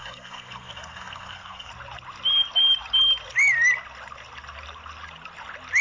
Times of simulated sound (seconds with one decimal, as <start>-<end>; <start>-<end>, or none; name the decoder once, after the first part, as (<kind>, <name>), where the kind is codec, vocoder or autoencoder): 0.0-1.7 (codec, SNAC)